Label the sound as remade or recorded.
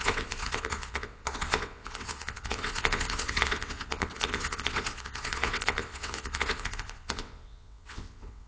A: remade